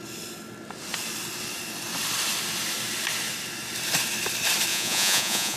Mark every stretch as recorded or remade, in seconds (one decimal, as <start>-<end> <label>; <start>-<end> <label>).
0.0-4.7 recorded; 4.7-5.6 remade